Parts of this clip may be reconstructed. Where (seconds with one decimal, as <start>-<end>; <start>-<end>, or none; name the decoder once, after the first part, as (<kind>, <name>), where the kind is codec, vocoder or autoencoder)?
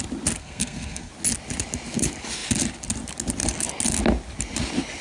0.4-1.1 (codec, SNAC)